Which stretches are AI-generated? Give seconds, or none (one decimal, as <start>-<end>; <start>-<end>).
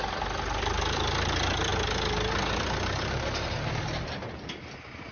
none